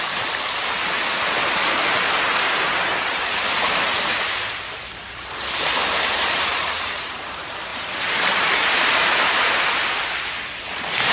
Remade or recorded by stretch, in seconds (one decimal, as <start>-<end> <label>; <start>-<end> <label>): 0.0-2.3 recorded; 2.3-7.2 remade; 7.2-7.7 recorded; 7.7-9.5 remade; 9.5-11.1 recorded